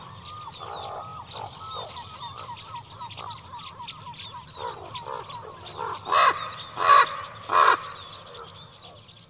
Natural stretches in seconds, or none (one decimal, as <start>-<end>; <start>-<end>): 0.0-9.3